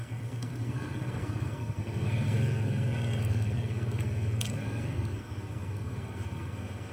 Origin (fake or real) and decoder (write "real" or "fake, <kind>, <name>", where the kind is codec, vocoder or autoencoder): fake, codec, SNAC